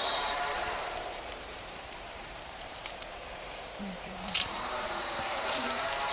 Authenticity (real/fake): fake